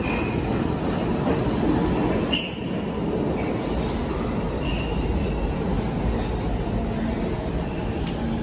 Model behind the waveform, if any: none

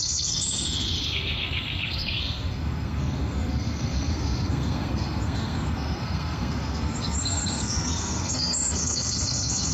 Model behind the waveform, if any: codec, SNAC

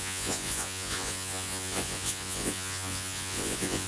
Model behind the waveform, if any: vocoder, Vocos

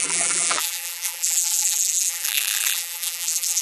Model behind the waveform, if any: vocoder, BigVGAN v2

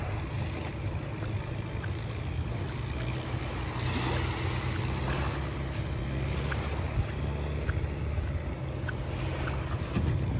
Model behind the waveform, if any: none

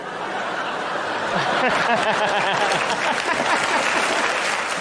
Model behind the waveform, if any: none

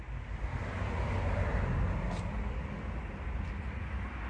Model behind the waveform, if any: none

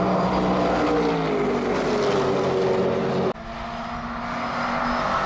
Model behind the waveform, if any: none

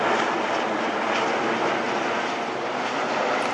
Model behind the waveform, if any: none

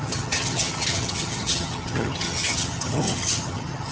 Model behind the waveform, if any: vocoder, HiFi-GAN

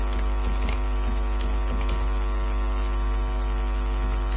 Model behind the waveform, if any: none